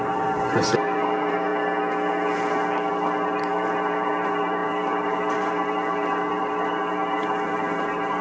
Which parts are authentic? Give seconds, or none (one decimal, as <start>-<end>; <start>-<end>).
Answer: 1.5-2.9